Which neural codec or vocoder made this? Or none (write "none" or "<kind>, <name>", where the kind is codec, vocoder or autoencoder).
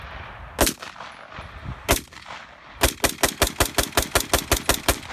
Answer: none